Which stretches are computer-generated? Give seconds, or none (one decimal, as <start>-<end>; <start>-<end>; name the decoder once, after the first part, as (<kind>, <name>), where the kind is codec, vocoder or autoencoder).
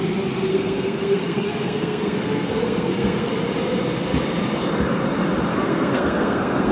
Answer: 0.5-3.3 (codec, SNAC); 5.5-6.7